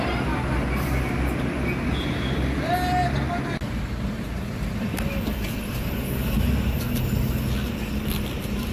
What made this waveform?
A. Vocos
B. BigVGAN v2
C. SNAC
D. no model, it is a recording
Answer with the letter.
D